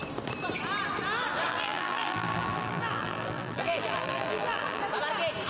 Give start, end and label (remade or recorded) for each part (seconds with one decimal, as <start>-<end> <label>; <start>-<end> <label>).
0.0-1.5 recorded; 1.5-4.8 remade; 4.8-5.5 recorded